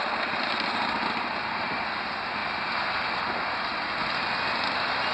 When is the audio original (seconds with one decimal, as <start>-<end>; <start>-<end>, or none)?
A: 0.0-5.1